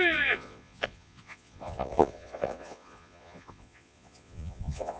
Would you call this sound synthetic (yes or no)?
yes